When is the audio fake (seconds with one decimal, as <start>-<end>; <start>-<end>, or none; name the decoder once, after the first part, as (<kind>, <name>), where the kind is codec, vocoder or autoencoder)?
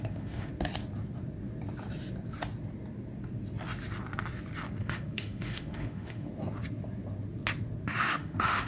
0.0-0.5 (autoencoder, DAC-VAE); 4.8-6.3; 7.9-8.7